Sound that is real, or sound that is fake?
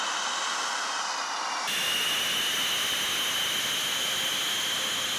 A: real